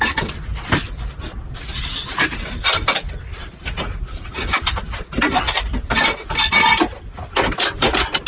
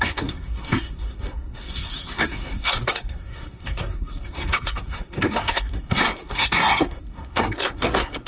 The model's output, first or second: second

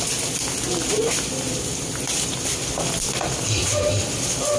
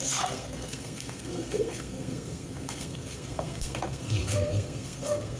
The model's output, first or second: second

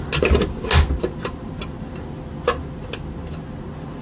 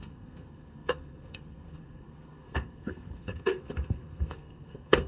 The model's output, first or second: second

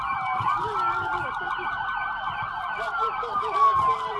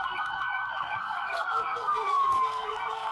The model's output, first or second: second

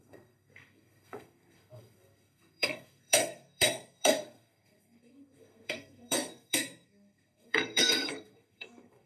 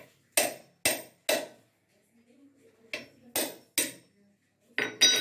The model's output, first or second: first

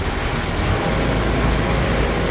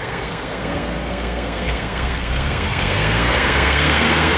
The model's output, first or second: second